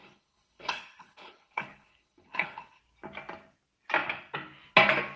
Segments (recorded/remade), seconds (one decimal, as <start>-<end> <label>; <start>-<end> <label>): 0.0-2.8 remade; 2.8-5.2 recorded